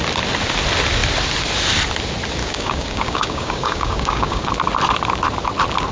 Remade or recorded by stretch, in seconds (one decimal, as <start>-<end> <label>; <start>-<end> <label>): 0.0-2.4 recorded; 2.4-4.5 remade; 4.5-5.9 recorded